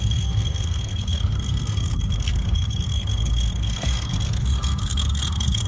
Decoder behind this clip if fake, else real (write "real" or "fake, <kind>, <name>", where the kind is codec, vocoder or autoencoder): fake, codec, SNAC